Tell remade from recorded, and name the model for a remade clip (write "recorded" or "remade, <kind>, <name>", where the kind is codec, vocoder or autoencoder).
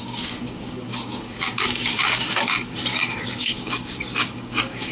remade, codec, DAC